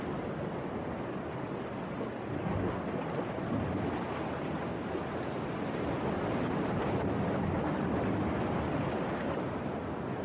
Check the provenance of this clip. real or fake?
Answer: real